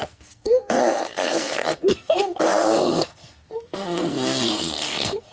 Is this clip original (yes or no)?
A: no